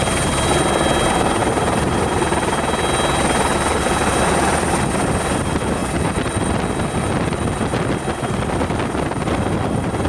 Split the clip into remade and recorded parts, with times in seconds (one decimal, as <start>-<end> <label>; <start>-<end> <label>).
0.0-10.1 recorded